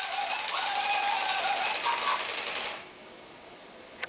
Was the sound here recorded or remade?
recorded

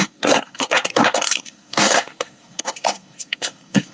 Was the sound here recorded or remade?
remade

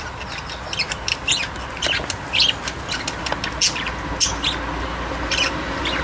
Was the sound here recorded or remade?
recorded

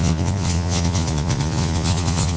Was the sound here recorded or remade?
remade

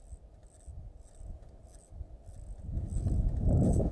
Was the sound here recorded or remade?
recorded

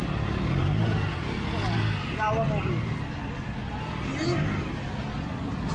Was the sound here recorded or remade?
recorded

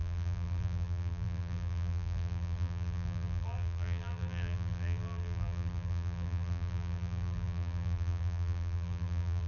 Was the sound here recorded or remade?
remade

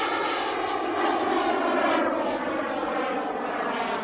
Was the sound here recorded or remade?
recorded